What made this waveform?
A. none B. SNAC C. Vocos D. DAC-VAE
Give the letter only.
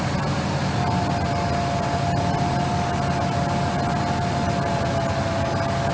A